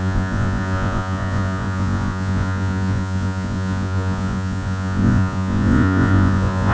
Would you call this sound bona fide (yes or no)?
no